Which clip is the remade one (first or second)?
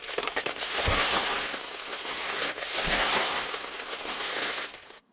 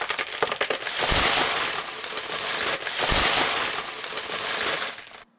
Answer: first